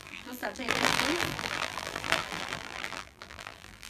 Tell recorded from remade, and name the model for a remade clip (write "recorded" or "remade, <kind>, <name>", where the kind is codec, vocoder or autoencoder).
remade, vocoder, BigVGAN v2